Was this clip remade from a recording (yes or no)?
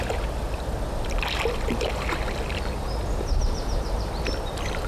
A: no